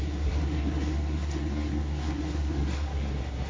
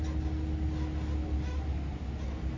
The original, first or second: second